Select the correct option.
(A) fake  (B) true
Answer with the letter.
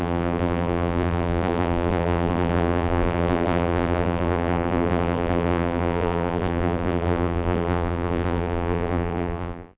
A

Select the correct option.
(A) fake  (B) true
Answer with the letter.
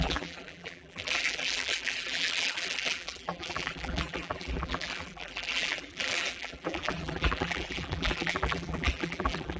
A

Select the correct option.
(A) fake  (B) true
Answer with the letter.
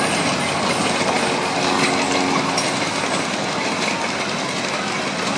B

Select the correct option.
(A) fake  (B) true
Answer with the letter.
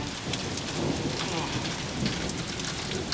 B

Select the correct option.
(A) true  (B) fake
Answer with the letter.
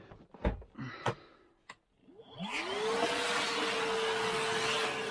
A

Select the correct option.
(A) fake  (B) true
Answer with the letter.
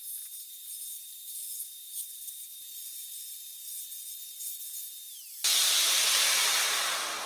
B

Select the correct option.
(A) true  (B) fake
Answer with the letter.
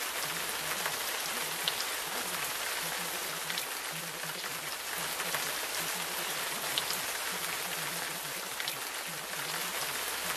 A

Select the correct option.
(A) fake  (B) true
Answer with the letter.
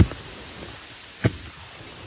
B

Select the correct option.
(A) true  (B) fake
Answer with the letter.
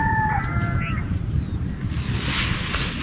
A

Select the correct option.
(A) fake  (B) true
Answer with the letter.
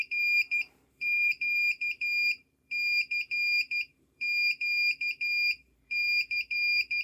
A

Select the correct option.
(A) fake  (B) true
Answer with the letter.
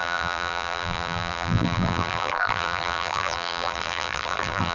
A